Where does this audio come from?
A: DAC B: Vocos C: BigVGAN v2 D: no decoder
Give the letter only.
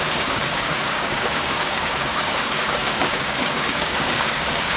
A